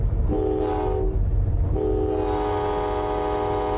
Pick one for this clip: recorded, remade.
recorded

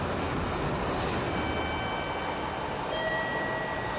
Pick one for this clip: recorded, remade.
recorded